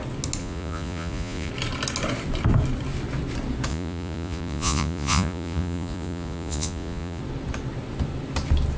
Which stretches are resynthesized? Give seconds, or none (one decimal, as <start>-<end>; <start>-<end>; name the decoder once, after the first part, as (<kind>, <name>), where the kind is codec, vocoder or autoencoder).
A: 0.4-1.5 (vocoder, Vocos); 3.7-7.2